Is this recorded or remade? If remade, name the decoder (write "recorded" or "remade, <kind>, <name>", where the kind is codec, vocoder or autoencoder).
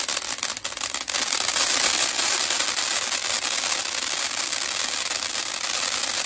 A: recorded